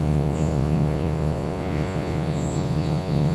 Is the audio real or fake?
fake